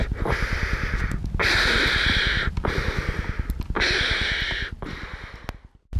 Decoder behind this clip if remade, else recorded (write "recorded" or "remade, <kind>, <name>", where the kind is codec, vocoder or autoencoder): recorded